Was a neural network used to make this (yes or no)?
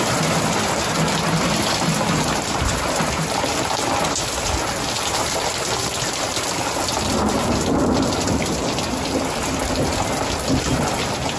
no